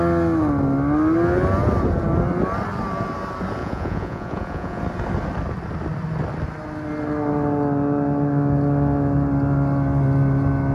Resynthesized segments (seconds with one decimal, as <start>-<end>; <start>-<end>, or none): 3.6-4.8